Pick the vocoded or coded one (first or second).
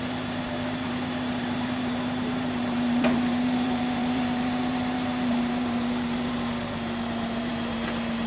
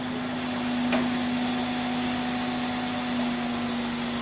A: first